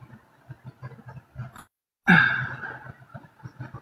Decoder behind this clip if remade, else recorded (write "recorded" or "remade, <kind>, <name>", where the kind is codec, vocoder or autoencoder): recorded